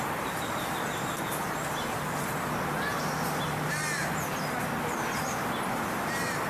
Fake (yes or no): no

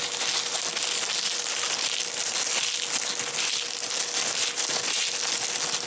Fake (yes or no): no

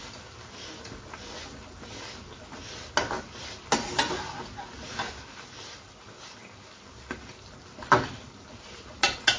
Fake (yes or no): no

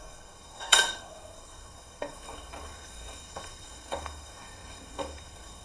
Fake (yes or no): yes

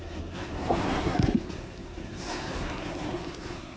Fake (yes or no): yes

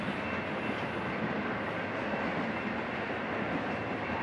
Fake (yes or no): no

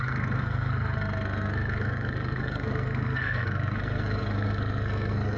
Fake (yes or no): yes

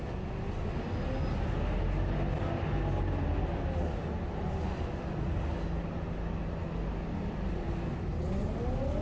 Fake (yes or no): no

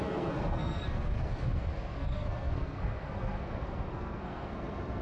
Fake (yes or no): yes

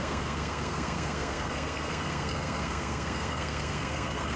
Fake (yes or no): yes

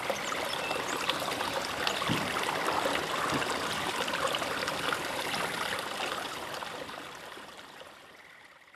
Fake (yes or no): no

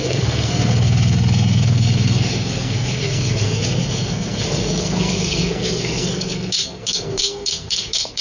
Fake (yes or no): yes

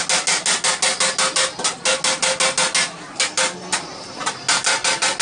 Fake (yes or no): no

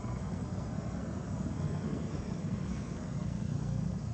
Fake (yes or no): yes